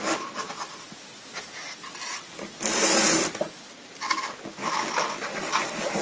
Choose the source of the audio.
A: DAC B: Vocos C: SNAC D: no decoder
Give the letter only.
D